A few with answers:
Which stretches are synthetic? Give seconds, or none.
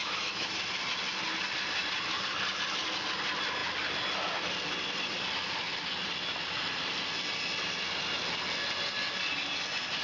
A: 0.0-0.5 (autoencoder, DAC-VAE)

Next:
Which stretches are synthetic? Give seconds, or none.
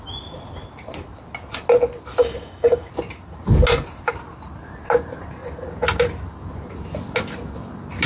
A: 2.2-2.9 (codec, DAC)